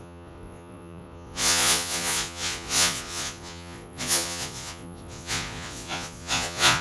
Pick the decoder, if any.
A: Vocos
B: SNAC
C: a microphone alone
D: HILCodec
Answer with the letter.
A